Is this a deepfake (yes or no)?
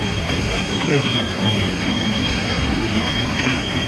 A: yes